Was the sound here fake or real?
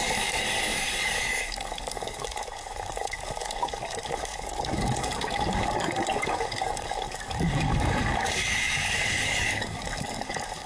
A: fake